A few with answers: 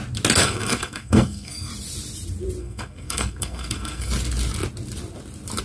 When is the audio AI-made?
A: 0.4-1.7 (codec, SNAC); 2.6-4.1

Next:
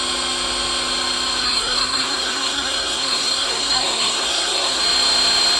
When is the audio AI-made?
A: 1.4-4.8 (codec, SNAC)

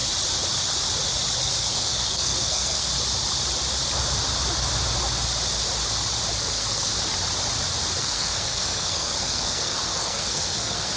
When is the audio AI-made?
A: 1.4-2.9 (codec, SNAC); 6.4-6.9; 8.0-11.0